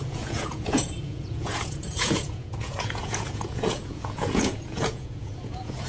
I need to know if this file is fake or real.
fake